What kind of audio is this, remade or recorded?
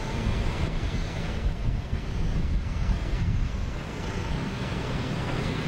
remade